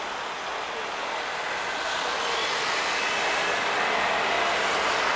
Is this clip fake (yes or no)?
no